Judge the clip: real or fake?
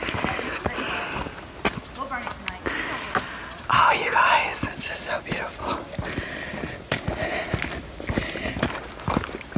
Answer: real